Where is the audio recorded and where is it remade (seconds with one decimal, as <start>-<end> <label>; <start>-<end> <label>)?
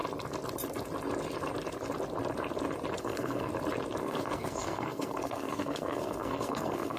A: 0.0-3.0 recorded; 3.0-3.5 remade; 3.5-4.0 recorded; 4.0-7.0 remade